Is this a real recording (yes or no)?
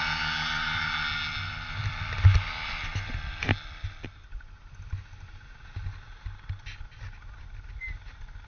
yes